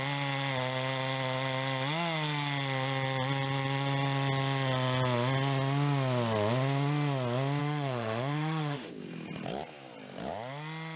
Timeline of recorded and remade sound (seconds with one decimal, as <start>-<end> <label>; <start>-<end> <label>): 0.0-7.6 recorded; 7.6-8.9 remade; 8.9-11.0 recorded